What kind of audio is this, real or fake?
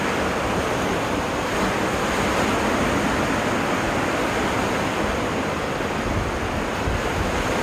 real